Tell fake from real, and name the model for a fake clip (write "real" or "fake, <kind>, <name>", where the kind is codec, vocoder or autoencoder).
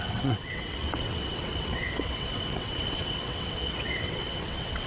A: fake, vocoder, WaveNeXt